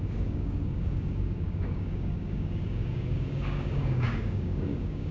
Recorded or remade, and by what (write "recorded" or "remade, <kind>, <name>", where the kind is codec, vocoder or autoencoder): remade, codec, DAC